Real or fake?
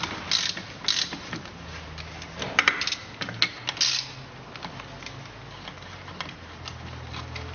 real